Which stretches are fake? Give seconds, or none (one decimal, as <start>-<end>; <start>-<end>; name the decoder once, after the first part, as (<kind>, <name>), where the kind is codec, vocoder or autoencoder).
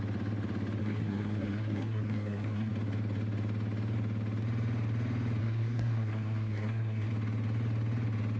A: 0.8-2.7 (codec, SNAC); 5.4-7.1